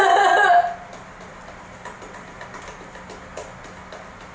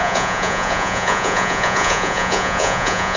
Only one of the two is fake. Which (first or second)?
second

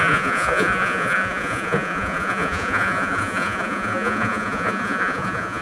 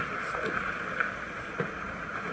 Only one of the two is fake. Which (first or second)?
first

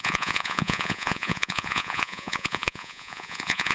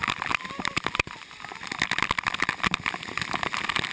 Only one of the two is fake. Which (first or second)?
first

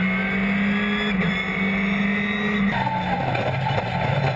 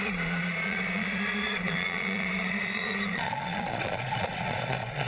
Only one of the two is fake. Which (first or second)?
second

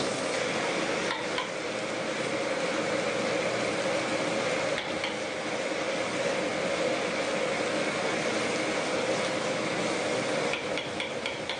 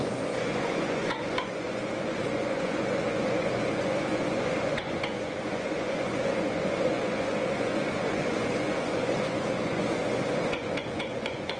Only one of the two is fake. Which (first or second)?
second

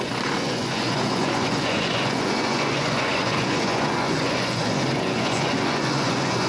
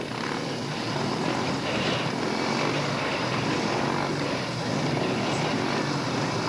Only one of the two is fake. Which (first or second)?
first